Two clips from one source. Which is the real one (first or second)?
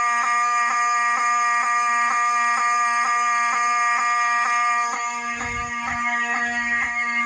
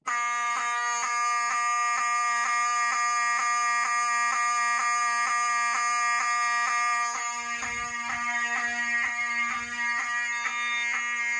second